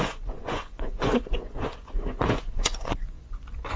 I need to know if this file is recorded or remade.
remade